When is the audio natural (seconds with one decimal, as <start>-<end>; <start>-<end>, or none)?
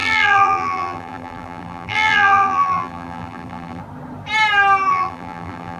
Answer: 3.8-4.9